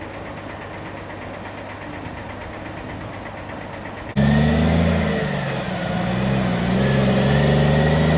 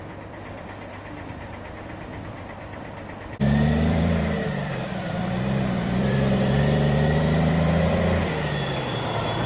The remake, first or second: second